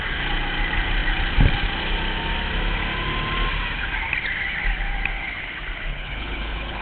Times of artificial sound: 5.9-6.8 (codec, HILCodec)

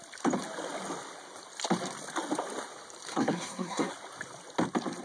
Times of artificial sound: 3.1-3.9 (codec, SNAC)

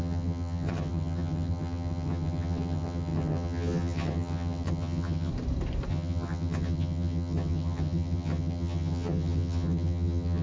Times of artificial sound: 0.0-5.3 (vocoder, HiFi-GAN); 5.9-10.4

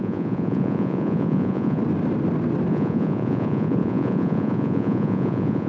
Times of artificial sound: 0.0-1.8 (vocoder, Vocos); 2.7-5.7